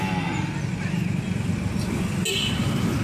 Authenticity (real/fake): real